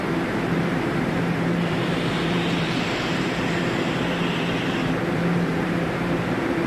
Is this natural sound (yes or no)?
no